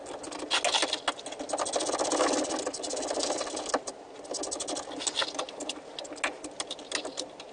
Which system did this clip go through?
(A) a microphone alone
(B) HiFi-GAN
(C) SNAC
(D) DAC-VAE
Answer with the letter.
A